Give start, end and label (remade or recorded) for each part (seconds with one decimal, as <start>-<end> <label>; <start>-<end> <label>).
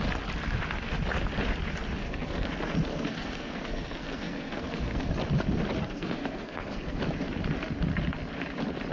0.0-2.0 recorded; 2.0-2.5 remade; 2.5-2.9 recorded; 2.9-5.1 remade; 5.1-5.8 recorded; 5.8-7.0 remade; 7.0-8.9 recorded